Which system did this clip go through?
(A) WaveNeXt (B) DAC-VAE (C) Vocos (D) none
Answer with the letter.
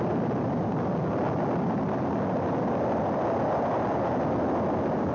D